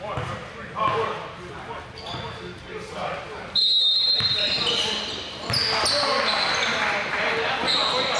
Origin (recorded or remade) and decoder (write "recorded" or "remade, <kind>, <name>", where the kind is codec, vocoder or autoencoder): recorded